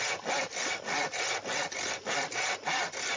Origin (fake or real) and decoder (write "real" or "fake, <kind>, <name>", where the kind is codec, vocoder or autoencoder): real